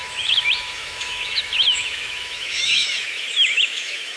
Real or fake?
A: fake